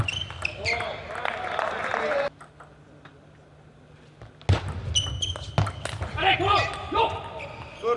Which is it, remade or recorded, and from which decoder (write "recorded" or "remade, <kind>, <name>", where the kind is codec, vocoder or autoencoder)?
recorded